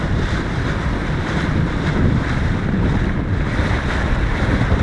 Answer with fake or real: fake